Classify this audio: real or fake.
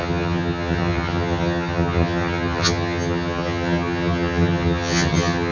fake